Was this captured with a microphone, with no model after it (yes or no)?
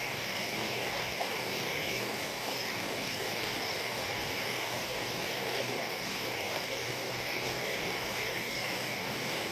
no